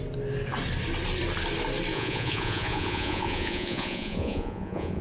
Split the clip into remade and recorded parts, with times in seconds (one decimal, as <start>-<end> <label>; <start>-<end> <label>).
0.0-1.9 recorded; 1.9-5.0 remade